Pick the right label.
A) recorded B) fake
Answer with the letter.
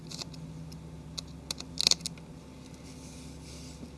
A